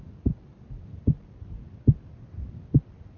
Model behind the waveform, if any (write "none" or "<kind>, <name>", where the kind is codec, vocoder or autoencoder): none